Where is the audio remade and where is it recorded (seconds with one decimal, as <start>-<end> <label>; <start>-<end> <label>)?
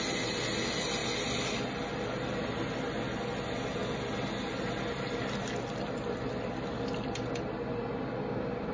0.0-8.7 recorded